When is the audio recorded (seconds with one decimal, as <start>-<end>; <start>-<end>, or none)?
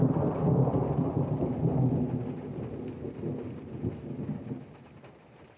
1.7-4.8